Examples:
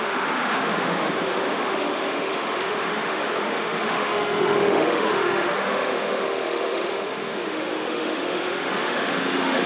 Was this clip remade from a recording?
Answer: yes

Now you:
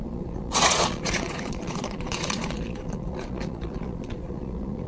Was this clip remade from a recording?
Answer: yes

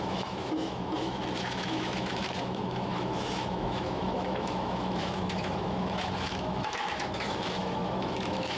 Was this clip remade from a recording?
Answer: yes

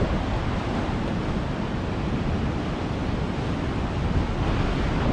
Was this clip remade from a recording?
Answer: no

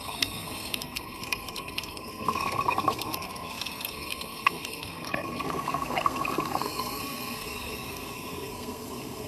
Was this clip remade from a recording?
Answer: yes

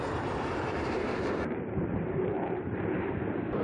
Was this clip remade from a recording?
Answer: yes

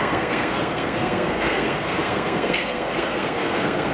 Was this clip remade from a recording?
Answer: yes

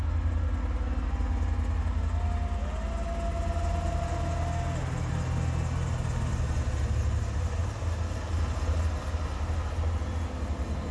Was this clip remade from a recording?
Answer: no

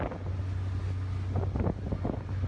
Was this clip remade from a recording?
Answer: no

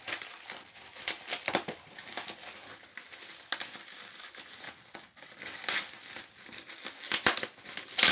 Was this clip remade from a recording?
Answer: no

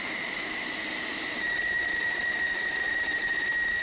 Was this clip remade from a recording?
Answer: yes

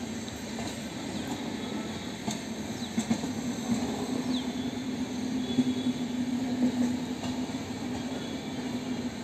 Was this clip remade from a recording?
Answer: no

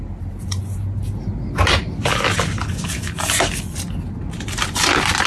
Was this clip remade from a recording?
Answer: no